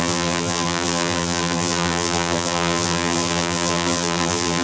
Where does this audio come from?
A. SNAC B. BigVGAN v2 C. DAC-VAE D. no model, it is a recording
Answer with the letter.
B